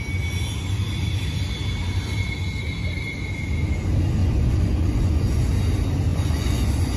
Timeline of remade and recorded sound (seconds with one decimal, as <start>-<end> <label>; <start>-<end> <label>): 0.0-4.2 recorded; 4.2-5.5 remade; 5.5-6.1 recorded; 6.1-7.0 remade